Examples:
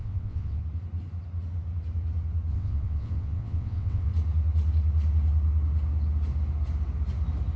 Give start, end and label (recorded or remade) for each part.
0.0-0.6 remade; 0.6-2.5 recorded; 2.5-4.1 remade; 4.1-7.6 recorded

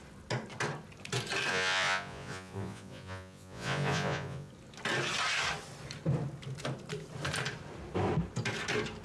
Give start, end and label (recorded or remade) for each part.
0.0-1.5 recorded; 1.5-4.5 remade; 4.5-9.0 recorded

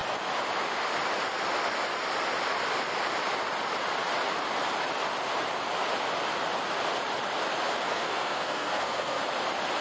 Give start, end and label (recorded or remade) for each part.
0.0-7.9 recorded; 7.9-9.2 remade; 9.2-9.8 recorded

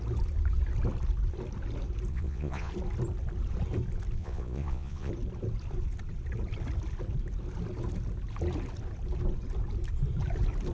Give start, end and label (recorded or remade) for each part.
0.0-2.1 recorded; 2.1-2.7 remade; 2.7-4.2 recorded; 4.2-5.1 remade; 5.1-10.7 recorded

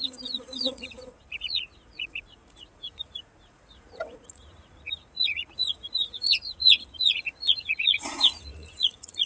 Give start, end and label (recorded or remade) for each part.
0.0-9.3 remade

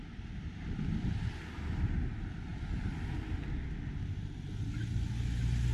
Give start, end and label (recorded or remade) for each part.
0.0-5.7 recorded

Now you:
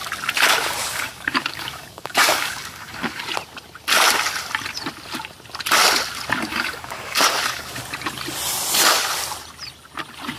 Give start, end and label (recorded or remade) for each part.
0.0-0.6 recorded; 0.6-3.2 remade; 3.2-6.5 recorded; 6.5-7.8 remade; 7.8-10.4 recorded

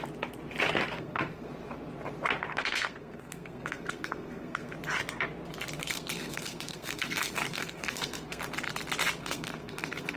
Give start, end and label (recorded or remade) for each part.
0.0-0.9 recorded; 0.9-1.5 remade; 1.5-2.5 recorded; 2.5-4.7 remade; 4.7-5.8 recorded; 5.8-8.4 remade; 8.4-9.2 recorded; 9.2-10.2 remade